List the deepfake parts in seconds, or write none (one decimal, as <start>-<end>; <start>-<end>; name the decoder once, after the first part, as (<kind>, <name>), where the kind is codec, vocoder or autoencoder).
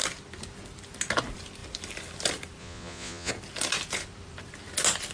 2.6-3.3 (vocoder, Vocos)